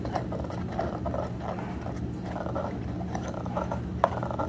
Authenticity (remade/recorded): recorded